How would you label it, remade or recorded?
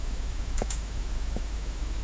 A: remade